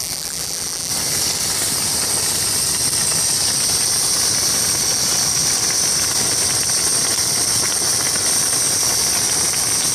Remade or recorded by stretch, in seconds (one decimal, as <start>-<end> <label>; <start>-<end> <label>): 0.0-0.9 remade; 0.9-9.9 recorded